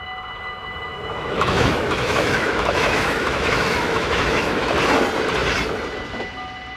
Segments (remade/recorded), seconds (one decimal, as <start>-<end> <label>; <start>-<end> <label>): 0.0-0.9 recorded; 0.9-4.7 remade; 4.7-6.8 recorded